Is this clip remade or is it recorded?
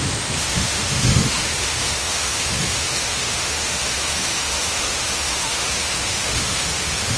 remade